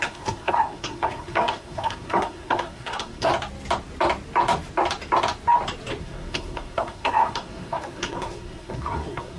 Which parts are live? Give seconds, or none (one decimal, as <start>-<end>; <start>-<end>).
3.3-6.0